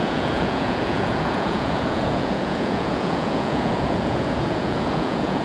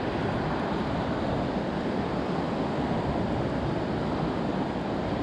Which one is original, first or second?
second